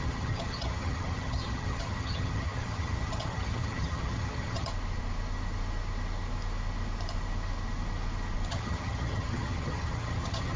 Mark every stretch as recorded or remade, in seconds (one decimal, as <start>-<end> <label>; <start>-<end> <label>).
0.0-4.7 remade; 4.7-8.5 recorded; 8.5-10.6 remade